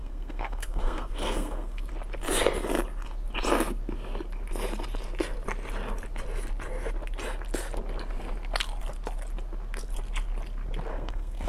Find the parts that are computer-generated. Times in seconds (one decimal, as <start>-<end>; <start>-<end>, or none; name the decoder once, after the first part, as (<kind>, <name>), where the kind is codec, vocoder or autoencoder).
0.0-1.9 (codec, SNAC); 10.9-11.5